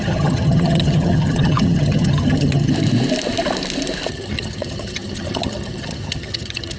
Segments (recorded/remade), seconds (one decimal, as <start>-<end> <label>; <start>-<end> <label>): 0.0-2.7 remade; 2.7-4.1 recorded; 4.1-6.8 remade